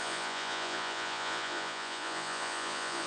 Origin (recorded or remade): remade